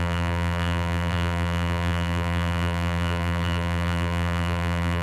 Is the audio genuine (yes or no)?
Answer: no